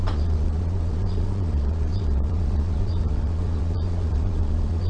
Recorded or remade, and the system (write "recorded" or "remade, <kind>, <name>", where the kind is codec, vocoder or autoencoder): remade, vocoder, Vocos